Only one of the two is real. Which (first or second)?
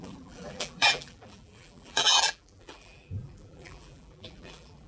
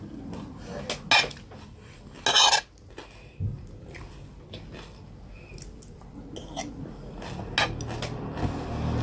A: second